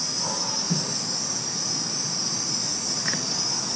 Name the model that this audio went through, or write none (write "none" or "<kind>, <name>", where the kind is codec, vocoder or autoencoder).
none